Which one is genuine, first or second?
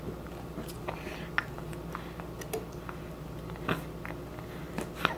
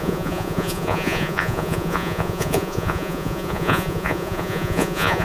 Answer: first